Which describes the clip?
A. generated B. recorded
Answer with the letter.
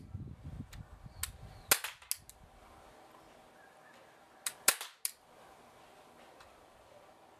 B